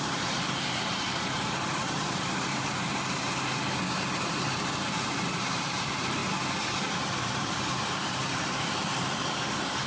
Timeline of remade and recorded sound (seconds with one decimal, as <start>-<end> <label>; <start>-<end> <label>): 0.0-2.9 remade; 2.9-4.5 recorded; 4.5-6.2 remade; 6.2-6.8 recorded; 6.8-9.9 remade